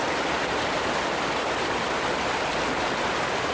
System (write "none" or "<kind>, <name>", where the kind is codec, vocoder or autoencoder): none